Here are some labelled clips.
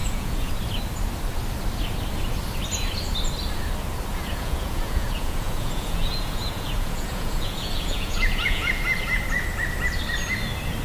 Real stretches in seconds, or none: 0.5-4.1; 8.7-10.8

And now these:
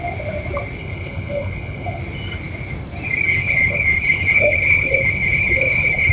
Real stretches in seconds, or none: 0.0-0.8; 2.0-3.3

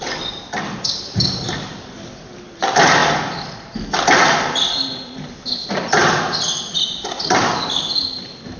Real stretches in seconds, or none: 0.0-8.6

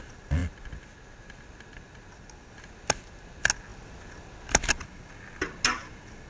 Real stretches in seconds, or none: 0.0-6.3

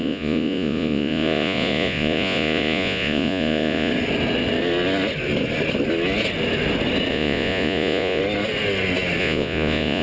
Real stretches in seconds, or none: 3.9-7.1; 8.2-9.2

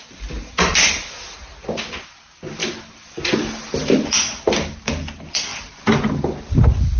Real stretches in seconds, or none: 0.0-7.0

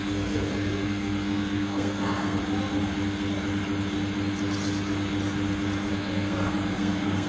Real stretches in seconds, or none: 2.4-5.9